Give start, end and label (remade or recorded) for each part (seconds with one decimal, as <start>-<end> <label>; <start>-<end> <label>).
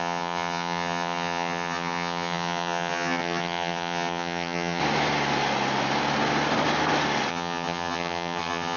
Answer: 0.0-4.8 remade; 4.8-7.3 recorded; 7.3-8.8 remade